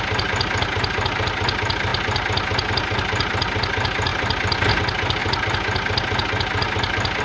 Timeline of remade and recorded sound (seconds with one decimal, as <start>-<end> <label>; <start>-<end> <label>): 0.0-4.1 recorded; 4.1-4.7 remade; 4.7-7.2 recorded